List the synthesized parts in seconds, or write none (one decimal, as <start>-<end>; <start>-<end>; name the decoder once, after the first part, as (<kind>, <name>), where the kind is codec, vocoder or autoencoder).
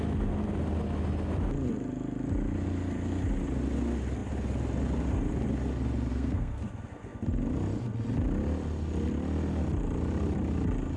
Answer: 6.1-6.6 (codec, SNAC)